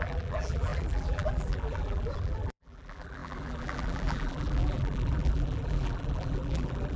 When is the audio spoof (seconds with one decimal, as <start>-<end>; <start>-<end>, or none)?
0.0-7.0